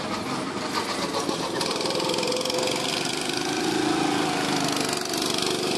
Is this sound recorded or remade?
recorded